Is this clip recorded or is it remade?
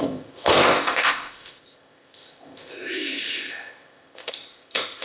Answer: remade